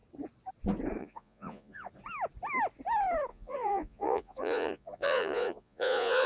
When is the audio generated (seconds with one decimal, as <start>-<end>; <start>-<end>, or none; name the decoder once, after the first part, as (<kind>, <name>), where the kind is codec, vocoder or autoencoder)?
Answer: 1.0-1.9 (vocoder, Vocos); 3.3-6.3